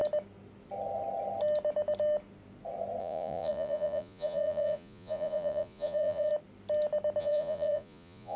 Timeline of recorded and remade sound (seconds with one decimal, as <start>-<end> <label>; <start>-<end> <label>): 0.0-3.0 recorded; 3.0-6.3 remade; 6.3-7.2 recorded; 7.2-8.4 remade